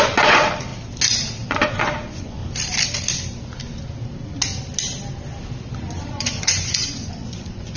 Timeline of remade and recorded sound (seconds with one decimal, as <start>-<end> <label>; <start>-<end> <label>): 0.0-0.7 remade; 0.7-1.5 recorded; 1.5-2.4 remade; 2.4-6.1 recorded; 6.1-7.8 remade